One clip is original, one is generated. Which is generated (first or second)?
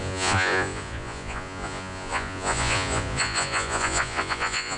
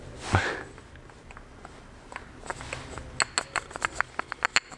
first